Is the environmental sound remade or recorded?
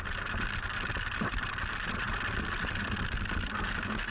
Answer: recorded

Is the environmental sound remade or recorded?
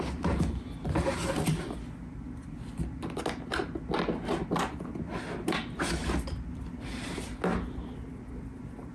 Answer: recorded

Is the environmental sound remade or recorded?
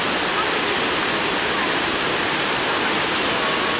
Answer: recorded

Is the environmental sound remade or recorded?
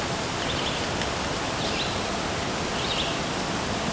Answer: recorded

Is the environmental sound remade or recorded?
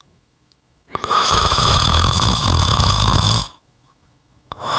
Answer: remade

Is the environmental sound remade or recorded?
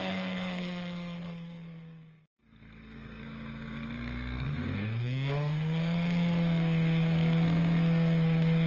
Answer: remade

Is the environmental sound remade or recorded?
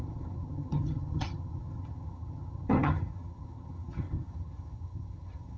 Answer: remade